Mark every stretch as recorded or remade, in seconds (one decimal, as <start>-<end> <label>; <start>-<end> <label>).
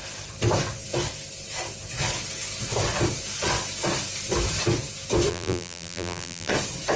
0.0-5.3 recorded; 5.3-6.5 remade; 6.5-7.0 recorded